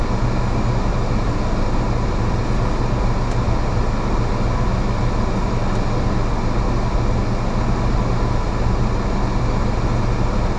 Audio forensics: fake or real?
real